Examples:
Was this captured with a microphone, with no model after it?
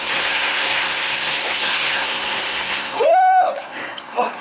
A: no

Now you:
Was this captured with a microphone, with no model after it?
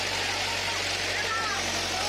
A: yes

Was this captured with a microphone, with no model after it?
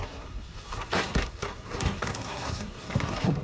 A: no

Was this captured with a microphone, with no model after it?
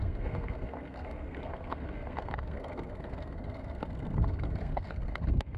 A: no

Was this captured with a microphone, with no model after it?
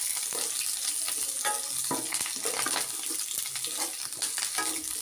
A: yes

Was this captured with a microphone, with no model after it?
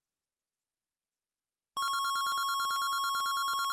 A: yes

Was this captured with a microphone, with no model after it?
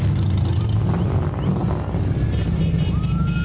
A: yes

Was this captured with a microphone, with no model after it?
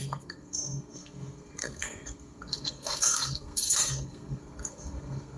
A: no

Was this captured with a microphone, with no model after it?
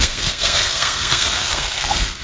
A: no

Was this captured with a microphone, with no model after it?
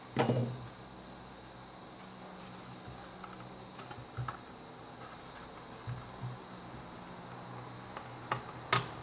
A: yes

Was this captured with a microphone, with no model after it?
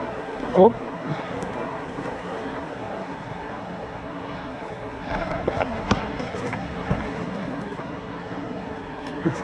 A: no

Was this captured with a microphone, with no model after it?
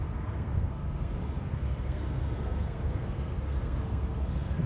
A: no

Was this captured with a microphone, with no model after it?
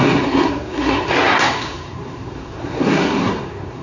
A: no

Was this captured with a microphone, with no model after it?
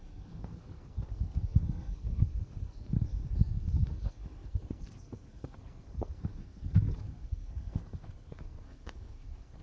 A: no